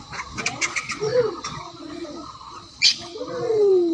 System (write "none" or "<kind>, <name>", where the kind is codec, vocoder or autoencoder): vocoder, Vocos